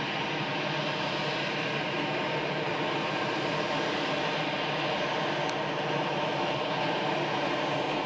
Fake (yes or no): no